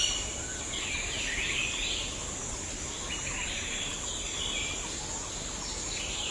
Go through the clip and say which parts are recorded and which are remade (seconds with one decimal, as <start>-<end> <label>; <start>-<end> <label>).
0.0-6.3 recorded